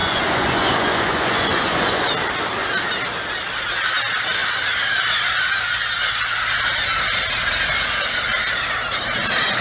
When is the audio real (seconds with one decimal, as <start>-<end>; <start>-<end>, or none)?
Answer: 2.1-9.6